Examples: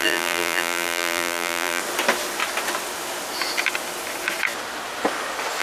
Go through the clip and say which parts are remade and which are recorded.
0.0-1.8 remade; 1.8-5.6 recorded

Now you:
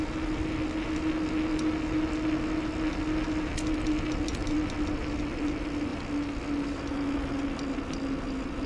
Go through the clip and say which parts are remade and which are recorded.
0.0-8.7 recorded

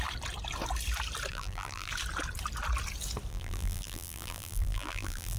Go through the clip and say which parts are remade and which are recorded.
0.0-1.3 recorded; 1.3-1.9 remade; 1.9-3.3 recorded; 3.3-5.4 remade

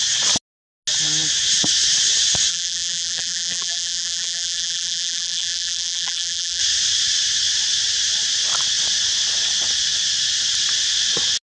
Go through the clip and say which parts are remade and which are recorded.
0.0-2.5 recorded; 2.5-6.6 remade; 6.6-11.5 recorded

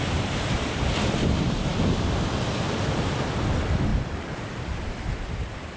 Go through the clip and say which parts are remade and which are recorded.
0.0-1.7 remade; 1.7-2.8 recorded; 2.8-5.8 remade

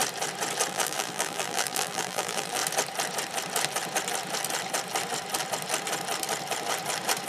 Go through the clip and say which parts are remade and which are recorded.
0.0-0.7 recorded; 0.7-2.6 remade; 2.6-7.3 recorded

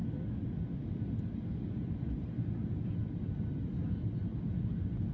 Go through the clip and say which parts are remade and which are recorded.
0.0-5.1 recorded